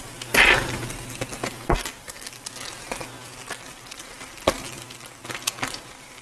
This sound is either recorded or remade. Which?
recorded